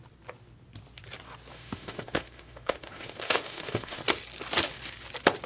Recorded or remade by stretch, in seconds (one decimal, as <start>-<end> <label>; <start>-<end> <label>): 0.0-1.5 recorded; 1.5-4.0 remade; 4.0-5.5 recorded

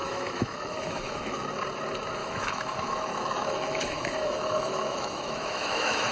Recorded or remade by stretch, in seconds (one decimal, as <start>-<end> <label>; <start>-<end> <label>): 0.0-1.5 remade; 1.5-2.2 recorded; 2.2-6.1 remade

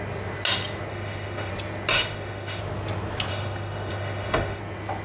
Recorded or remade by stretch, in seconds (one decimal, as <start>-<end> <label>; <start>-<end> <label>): 0.0-0.9 recorded; 0.9-1.5 remade; 1.5-1.9 recorded; 1.9-2.6 remade; 2.6-3.3 recorded; 3.3-4.6 remade; 4.6-5.0 recorded

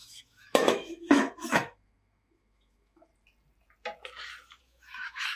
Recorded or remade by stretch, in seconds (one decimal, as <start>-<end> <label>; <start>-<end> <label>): 0.0-3.1 remade; 3.1-4.6 recorded; 4.6-5.4 remade

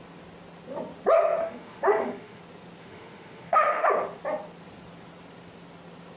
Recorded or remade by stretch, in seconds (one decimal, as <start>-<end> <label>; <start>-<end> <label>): 0.0-1.4 recorded; 1.4-2.4 remade; 2.4-2.8 recorded; 2.8-3.9 remade; 3.9-6.2 recorded